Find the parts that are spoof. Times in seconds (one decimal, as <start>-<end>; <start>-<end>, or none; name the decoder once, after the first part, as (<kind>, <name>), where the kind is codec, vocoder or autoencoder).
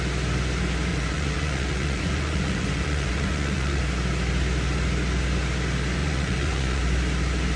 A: 0.9-3.8 (vocoder, Vocos); 6.0-6.8